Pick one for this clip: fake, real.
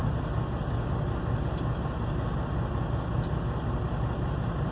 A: real